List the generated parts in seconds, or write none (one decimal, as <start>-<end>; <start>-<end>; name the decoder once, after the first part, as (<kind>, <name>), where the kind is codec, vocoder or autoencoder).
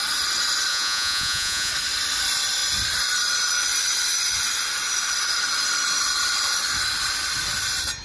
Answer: 0.7-1.7 (vocoder, Vocos)